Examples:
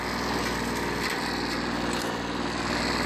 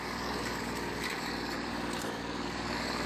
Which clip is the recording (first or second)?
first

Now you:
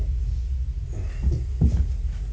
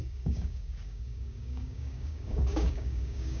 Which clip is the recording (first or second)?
first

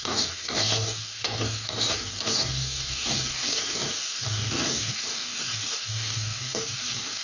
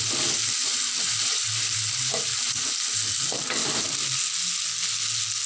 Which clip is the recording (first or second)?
second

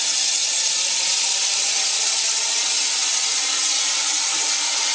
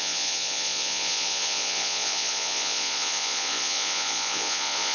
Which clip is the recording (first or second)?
first